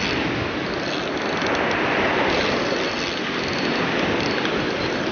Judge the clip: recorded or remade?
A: recorded